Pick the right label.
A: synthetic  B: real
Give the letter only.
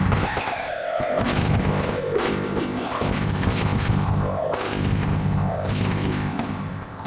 A